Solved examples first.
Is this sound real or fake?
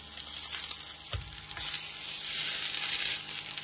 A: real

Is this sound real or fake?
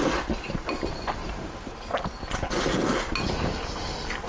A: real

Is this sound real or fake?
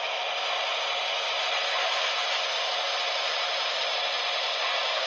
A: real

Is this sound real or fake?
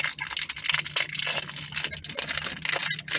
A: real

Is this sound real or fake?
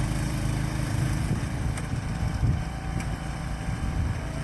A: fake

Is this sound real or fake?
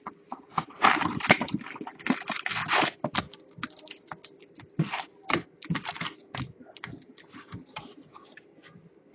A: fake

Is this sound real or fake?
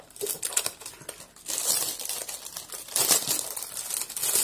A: real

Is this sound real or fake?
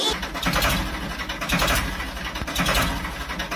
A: real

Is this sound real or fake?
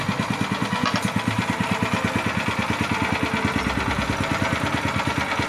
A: real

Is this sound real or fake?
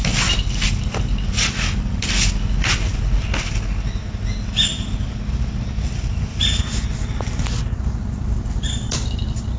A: real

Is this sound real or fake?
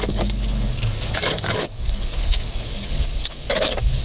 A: fake